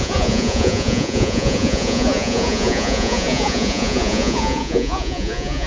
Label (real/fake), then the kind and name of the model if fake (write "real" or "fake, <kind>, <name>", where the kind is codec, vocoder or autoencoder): fake, vocoder, Vocos